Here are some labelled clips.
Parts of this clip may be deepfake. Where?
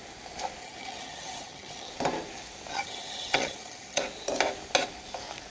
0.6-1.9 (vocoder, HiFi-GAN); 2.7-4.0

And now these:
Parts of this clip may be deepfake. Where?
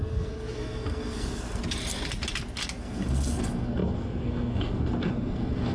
0.0-1.6 (codec, SNAC); 2.8-5.7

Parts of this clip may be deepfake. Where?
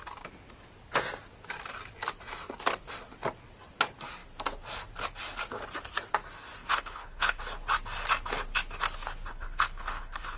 6.6-7.4 (codec, HILCodec); 9.3-10.4